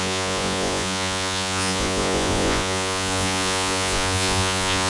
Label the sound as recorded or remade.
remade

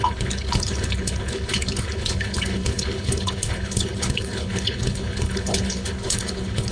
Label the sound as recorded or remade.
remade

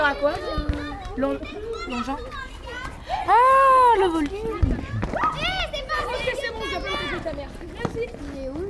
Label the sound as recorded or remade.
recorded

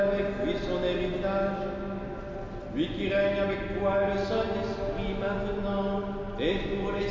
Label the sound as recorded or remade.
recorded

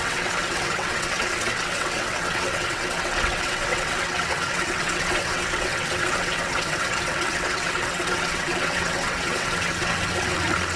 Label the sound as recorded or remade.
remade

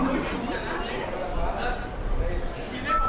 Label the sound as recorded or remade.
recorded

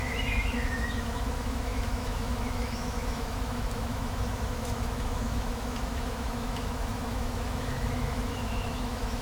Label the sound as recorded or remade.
remade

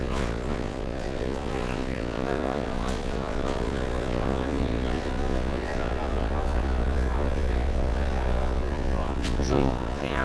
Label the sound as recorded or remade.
remade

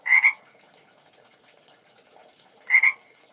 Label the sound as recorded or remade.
remade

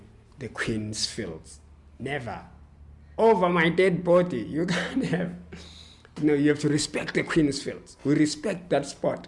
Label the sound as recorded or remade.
recorded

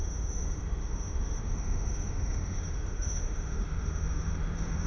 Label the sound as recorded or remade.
remade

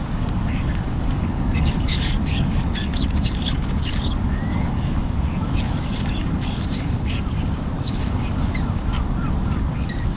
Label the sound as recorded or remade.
remade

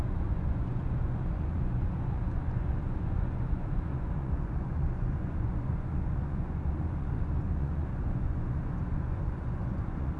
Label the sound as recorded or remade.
remade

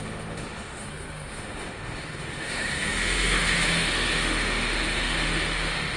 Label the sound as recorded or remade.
remade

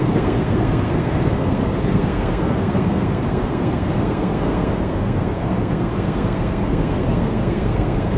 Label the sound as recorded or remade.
remade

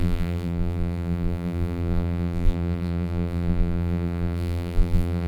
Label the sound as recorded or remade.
remade